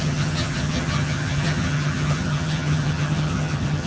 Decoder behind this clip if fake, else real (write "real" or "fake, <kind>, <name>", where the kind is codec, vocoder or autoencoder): fake, vocoder, HiFi-GAN